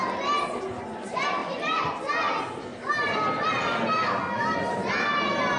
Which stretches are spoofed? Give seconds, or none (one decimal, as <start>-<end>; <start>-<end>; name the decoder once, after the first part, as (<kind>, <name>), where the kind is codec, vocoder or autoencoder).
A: 1.4-2.0 (vocoder, BigVGAN v2); 2.7-4.9